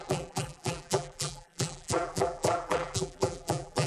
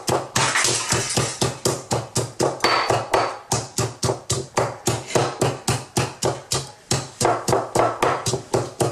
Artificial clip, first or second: first